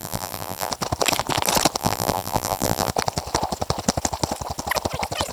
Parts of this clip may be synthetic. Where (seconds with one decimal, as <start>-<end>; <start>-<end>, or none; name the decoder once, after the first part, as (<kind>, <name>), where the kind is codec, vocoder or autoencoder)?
0.0-0.7 (vocoder, BigVGAN v2); 1.8-2.9

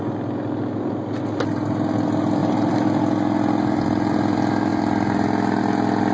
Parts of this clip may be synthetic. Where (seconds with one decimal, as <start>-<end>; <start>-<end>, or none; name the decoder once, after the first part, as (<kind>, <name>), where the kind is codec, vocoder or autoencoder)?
2.4-3.0 (vocoder, BigVGAN v2)